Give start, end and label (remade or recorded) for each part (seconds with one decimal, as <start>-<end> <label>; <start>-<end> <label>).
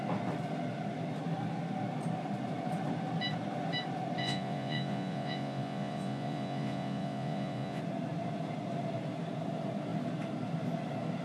0.0-4.2 recorded; 4.2-7.8 remade; 7.8-11.2 recorded